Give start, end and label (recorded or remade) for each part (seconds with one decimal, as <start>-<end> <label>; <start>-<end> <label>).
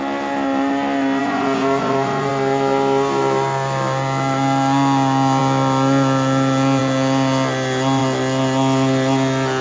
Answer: 0.0-1.2 recorded; 1.2-2.3 remade; 2.3-9.6 recorded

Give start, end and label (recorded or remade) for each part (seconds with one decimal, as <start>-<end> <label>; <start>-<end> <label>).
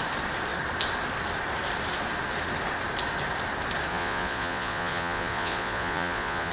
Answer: 0.0-3.9 recorded; 3.9-6.5 remade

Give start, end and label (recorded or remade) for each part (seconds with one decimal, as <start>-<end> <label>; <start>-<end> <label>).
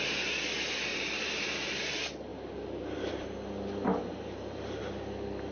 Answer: 0.0-0.9 recorded; 0.9-1.8 remade; 1.8-2.3 recorded; 2.3-3.1 remade; 3.1-3.9 recorded; 3.9-4.8 remade; 4.8-5.5 recorded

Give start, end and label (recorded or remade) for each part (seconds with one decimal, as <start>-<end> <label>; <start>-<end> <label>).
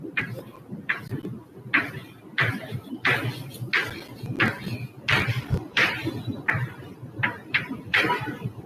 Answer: 0.0-0.5 remade; 0.5-5.4 recorded; 5.4-6.0 remade; 6.0-6.5 recorded; 6.5-8.7 remade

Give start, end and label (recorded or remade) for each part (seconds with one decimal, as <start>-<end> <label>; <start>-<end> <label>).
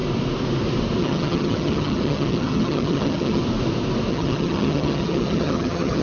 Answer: 0.0-1.0 recorded; 1.0-3.4 remade; 3.4-4.1 recorded; 4.1-6.0 remade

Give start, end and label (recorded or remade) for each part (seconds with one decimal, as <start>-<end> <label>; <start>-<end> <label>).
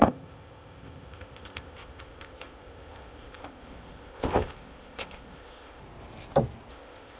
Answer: 0.0-5.8 remade; 5.8-6.7 recorded; 6.7-7.2 remade